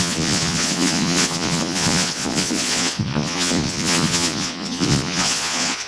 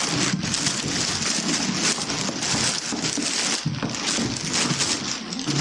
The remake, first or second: first